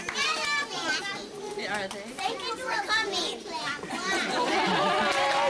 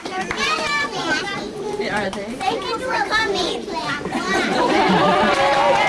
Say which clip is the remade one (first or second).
second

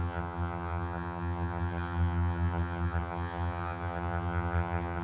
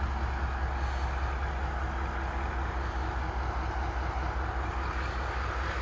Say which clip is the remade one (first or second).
first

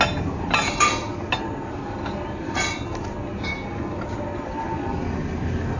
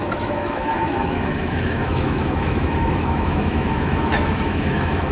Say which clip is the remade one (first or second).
second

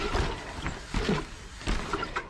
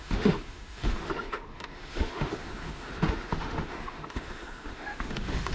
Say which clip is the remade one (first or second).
second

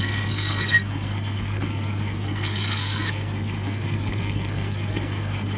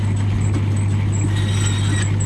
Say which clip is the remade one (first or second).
first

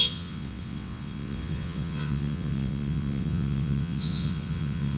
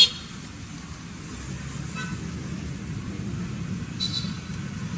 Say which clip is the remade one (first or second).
first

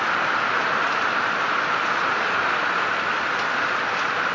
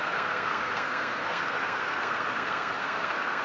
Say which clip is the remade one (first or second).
second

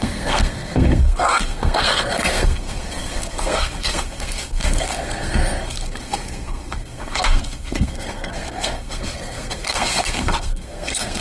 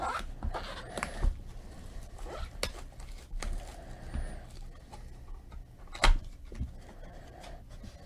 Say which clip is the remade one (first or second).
first